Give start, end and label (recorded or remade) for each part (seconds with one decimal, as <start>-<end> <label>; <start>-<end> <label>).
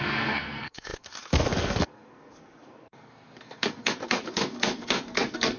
0.0-5.6 remade